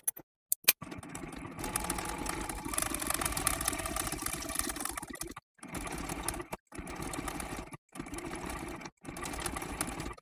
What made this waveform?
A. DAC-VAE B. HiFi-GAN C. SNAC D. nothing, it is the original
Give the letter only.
D